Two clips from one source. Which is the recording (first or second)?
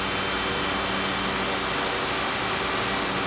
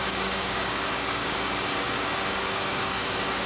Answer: first